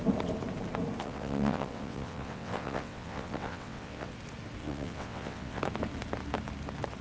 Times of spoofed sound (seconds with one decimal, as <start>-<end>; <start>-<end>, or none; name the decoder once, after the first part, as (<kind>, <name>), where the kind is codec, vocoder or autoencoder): 1.0-4.1 (vocoder, WaveNeXt); 4.6-5.6